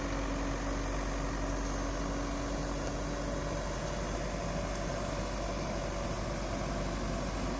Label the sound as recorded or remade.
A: recorded